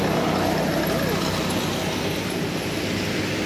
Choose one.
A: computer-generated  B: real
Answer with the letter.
B